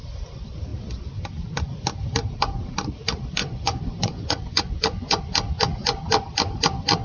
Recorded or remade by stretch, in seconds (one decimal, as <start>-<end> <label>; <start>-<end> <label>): 0.0-3.4 recorded; 3.4-5.2 remade; 5.2-7.0 recorded